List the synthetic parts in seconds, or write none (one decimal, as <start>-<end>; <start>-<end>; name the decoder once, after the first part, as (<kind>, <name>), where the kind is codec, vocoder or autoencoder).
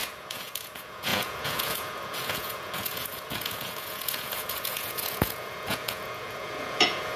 0.0-7.2 (vocoder, Vocos)